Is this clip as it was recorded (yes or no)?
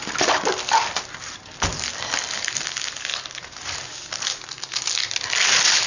yes